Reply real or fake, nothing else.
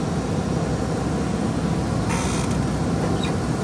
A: real